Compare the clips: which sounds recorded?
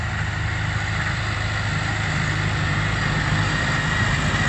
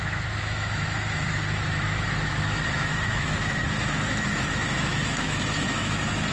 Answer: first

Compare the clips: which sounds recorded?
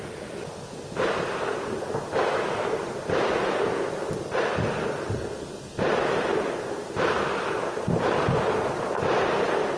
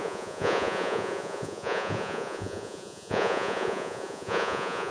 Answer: first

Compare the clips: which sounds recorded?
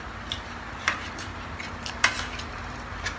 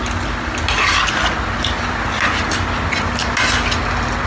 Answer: second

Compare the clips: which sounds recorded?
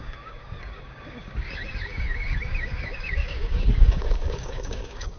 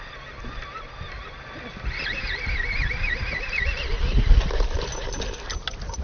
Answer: second